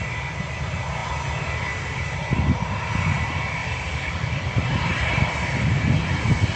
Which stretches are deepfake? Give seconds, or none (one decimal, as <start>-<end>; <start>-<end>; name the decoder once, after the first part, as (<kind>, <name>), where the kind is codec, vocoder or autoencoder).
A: 3.6-5.2 (vocoder, BigVGAN v2)